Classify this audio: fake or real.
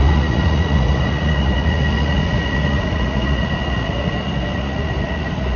fake